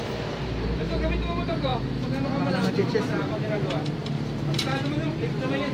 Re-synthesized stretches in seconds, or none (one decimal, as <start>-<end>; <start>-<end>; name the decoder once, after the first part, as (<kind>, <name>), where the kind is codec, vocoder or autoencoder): 0.0-1.7 (vocoder, BigVGAN v2); 2.7-5.7